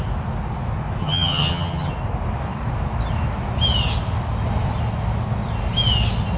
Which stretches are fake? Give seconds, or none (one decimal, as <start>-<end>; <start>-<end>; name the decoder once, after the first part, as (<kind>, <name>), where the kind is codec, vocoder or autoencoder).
1.0-1.9 (vocoder, HiFi-GAN)